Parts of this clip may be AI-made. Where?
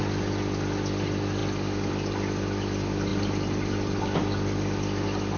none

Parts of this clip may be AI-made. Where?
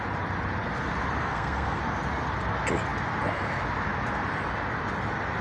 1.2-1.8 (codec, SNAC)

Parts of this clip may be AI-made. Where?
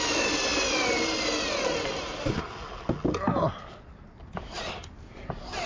none